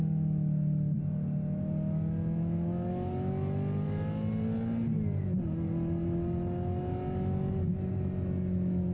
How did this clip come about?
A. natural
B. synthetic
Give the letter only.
A